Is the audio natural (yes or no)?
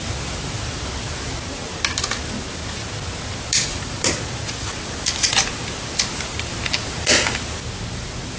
yes